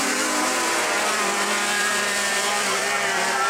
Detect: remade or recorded remade